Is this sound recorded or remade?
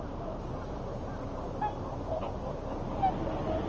recorded